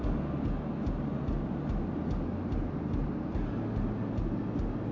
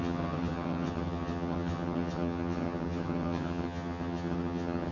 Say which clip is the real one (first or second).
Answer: first